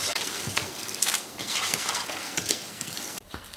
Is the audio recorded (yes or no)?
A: no